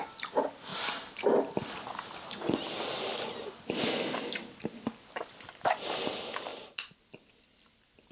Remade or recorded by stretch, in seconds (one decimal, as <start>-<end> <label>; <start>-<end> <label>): 0.0-8.1 recorded